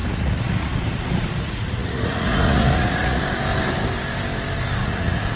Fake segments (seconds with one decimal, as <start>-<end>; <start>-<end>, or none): 0.0-3.2; 4.8-5.4

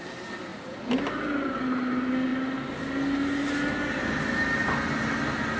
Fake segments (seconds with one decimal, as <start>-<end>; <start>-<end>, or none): none

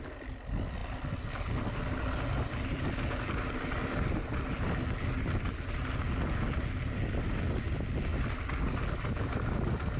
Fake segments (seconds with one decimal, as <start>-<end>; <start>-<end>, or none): none

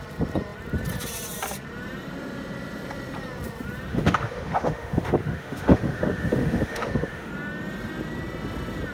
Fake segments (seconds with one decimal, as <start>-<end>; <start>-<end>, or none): 3.9-7.3

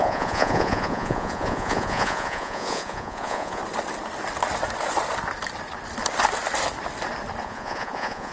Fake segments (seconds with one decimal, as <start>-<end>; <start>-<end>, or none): 0.0-3.6; 7.4-8.3

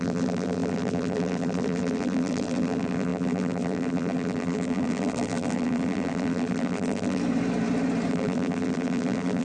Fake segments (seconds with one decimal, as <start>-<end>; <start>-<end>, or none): 0.0-7.2; 8.1-9.4

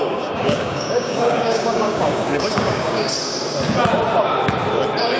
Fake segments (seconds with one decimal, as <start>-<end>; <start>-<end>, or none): 0.0-3.1